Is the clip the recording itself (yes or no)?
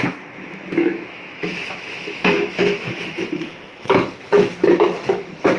no